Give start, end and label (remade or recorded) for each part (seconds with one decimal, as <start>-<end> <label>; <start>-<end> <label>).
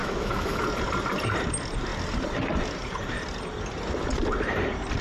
0.0-0.6 remade; 0.6-5.0 recorded